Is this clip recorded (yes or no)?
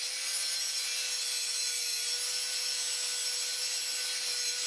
yes